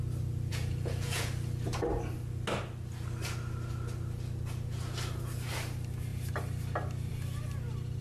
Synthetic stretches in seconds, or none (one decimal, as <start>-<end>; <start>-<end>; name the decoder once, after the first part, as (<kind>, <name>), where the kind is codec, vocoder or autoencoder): 0.5-1.3 (vocoder, Vocos)

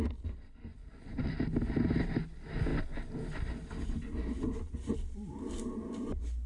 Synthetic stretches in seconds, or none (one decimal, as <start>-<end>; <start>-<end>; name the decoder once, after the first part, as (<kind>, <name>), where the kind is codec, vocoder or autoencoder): 0.7-1.3 (vocoder, Vocos)

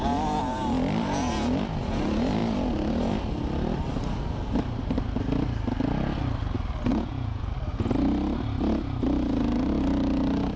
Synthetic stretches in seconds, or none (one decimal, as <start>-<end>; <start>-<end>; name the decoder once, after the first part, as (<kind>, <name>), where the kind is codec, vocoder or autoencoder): 6.9-7.5 (vocoder, Vocos)

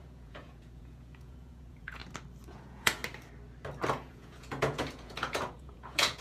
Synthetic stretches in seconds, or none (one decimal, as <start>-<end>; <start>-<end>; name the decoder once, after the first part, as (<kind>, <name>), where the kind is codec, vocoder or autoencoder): 0.0-2.0 (vocoder, Vocos); 2.5-3.0; 3.9-6.2

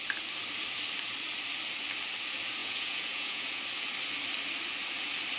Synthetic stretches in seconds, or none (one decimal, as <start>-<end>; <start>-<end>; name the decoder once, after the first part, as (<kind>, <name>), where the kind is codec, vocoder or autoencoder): 2.6-3.6 (vocoder, Vocos)